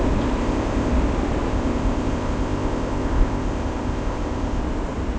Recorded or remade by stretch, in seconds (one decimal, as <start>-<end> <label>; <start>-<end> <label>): 0.0-0.4 recorded; 0.4-0.9 remade; 0.9-1.5 recorded; 1.5-4.6 remade; 4.6-5.2 recorded